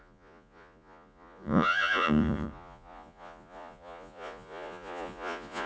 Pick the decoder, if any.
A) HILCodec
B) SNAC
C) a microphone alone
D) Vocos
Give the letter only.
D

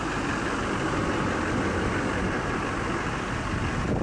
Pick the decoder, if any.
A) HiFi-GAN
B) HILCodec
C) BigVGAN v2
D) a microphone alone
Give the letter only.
D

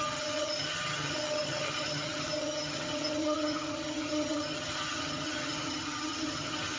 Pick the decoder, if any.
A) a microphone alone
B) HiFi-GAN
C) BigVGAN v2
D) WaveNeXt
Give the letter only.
B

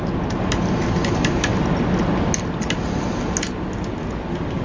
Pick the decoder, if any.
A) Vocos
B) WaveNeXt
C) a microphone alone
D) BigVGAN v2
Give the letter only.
C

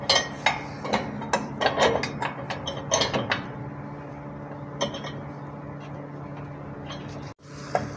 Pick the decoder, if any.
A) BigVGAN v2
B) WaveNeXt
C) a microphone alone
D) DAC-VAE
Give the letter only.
C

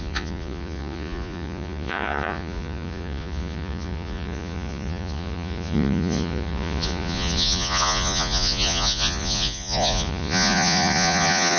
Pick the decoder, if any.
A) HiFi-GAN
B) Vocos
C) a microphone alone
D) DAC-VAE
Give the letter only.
B